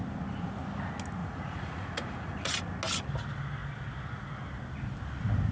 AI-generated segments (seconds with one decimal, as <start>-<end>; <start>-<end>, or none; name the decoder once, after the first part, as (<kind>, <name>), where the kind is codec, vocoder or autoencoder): 1.2-2.5 (vocoder, Vocos)